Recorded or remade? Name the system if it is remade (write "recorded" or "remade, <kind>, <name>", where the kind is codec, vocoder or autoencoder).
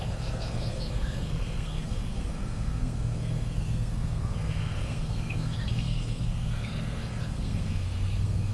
remade, codec, SNAC